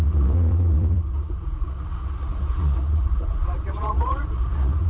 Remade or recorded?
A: remade